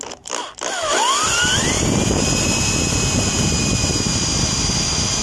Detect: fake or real real